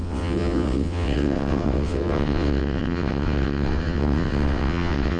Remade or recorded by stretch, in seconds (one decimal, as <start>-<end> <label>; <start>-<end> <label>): 0.0-5.2 remade